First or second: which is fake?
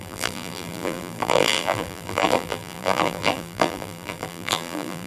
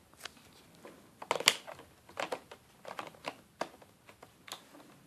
first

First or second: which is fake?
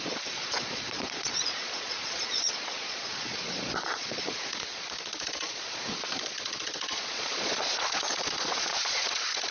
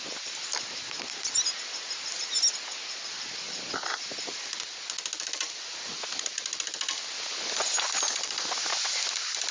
first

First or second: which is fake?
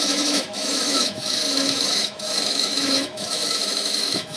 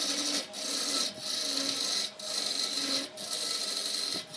first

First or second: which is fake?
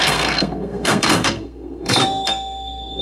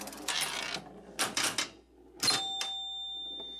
first